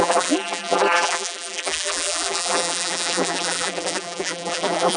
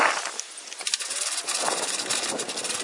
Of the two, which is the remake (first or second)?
first